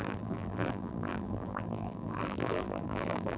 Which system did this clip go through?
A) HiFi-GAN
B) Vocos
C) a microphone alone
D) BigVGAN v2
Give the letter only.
D